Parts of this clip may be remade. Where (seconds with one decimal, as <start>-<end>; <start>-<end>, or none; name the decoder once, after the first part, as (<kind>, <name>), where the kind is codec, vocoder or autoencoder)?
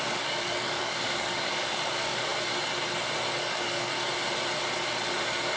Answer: 0.0-2.3 (codec, DAC); 3.4-3.9